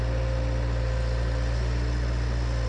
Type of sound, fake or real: real